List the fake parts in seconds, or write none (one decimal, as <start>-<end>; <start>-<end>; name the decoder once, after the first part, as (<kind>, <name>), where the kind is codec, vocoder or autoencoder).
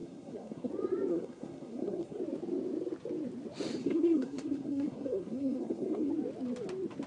0.0-0.7 (codec, SNAC); 1.1-2.2; 3.8-6.1